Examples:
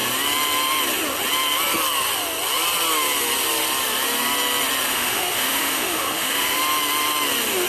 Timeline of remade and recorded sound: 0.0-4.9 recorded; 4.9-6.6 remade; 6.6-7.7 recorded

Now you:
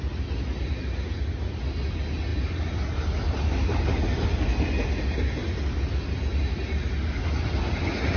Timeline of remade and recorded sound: 0.0-8.2 recorded

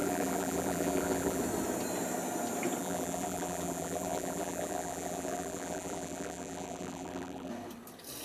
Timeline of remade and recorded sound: 0.0-1.4 remade; 1.4-2.8 recorded; 2.8-7.5 remade; 7.5-8.2 recorded

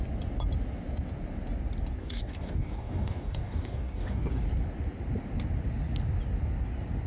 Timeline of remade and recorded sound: 0.0-2.0 recorded; 2.0-4.4 remade; 4.4-7.1 recorded

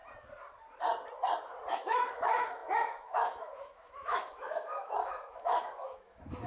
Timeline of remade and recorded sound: 0.0-1.7 recorded; 1.7-6.5 remade

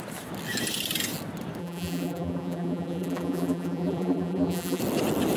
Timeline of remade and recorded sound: 0.0-1.6 recorded; 1.6-4.8 remade; 4.8-5.4 recorded

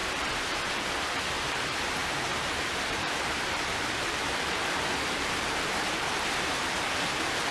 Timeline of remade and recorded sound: 0.0-7.5 remade